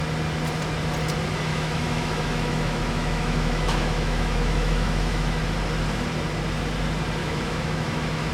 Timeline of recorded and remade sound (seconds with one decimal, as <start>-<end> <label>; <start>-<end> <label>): 0.0-1.5 recorded; 1.5-5.4 remade; 5.4-7.2 recorded; 7.2-8.3 remade